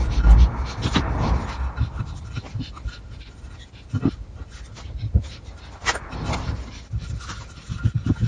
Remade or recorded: recorded